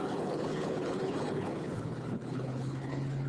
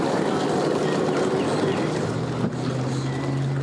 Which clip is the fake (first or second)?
first